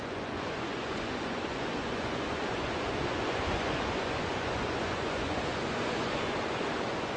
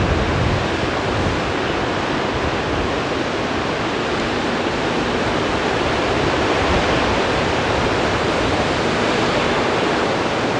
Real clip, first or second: second